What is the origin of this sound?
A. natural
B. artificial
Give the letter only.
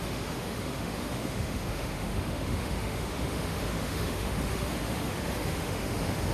B